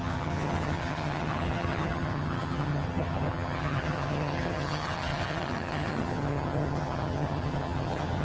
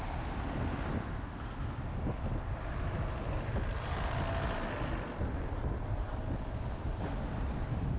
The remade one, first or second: first